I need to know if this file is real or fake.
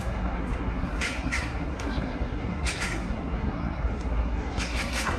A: fake